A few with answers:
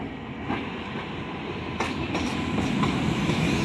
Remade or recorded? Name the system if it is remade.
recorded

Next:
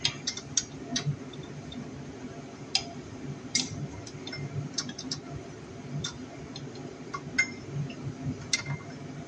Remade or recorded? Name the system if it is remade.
recorded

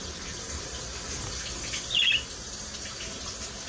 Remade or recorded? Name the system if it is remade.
recorded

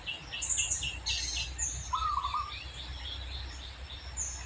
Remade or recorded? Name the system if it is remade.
recorded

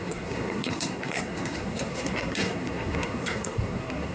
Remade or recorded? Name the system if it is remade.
remade, codec, SNAC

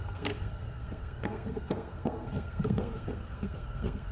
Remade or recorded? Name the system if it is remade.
remade, codec, SNAC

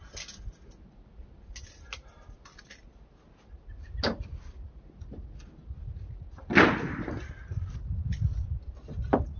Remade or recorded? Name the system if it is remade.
recorded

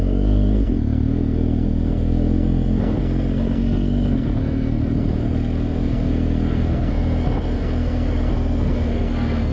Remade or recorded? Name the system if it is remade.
remade, codec, SNAC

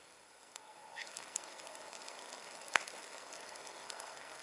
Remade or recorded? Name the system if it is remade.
remade, codec, SNAC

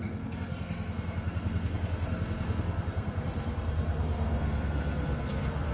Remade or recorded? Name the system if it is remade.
remade, codec, SNAC